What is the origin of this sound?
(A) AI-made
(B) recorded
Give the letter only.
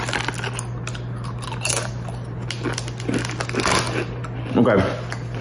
B